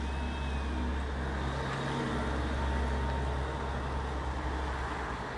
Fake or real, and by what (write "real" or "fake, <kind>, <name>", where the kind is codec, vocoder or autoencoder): real